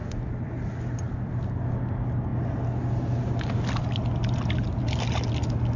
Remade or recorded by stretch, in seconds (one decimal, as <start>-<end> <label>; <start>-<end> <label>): 0.0-5.8 recorded